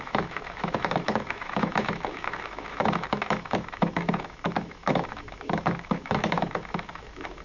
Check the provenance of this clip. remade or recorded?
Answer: remade